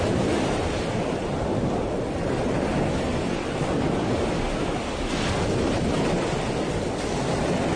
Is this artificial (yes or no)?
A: no